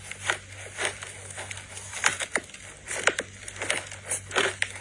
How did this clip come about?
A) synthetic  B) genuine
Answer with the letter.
B